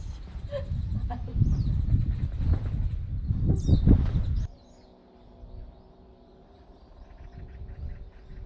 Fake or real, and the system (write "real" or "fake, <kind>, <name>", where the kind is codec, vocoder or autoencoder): real